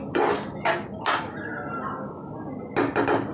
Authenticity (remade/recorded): recorded